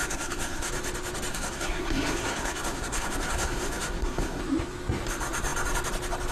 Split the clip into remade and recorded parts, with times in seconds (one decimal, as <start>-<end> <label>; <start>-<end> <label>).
0.0-0.7 remade; 0.7-1.3 recorded; 1.3-4.4 remade; 4.4-6.3 recorded

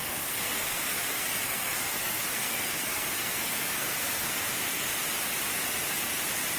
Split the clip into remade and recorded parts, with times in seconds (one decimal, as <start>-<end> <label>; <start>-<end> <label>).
0.0-4.9 remade; 4.9-6.6 recorded

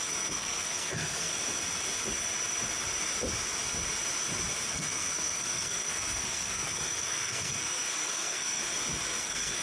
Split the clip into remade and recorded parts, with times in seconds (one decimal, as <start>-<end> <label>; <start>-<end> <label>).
0.0-1.3 remade; 1.3-4.7 recorded; 4.7-8.6 remade; 8.6-9.2 recorded; 9.2-9.6 remade

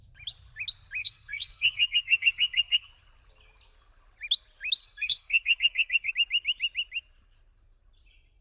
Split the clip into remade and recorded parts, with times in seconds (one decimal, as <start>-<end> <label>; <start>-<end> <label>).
0.0-1.0 recorded; 1.0-2.9 remade; 2.9-4.8 recorded; 4.8-6.1 remade; 6.1-8.4 recorded